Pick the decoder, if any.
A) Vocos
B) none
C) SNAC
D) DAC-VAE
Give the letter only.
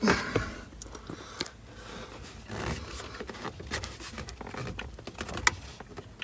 B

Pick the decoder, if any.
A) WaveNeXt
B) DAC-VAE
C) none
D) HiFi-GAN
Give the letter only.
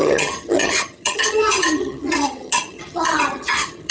D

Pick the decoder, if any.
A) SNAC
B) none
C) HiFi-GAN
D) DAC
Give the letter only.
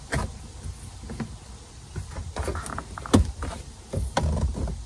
B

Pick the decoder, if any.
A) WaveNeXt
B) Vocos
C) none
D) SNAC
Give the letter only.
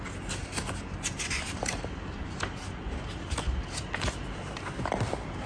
C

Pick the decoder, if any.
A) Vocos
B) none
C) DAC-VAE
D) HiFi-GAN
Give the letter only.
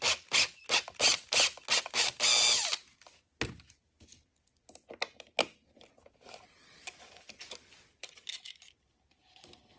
B